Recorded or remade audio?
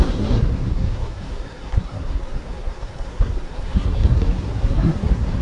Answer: remade